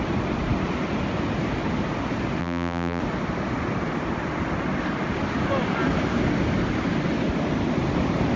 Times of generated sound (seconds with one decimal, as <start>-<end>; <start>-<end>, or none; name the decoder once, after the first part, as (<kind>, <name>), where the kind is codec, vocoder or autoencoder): 2.4-3.0 (vocoder, BigVGAN v2)